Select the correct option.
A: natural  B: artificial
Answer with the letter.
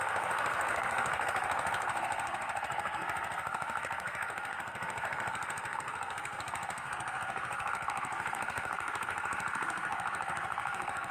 B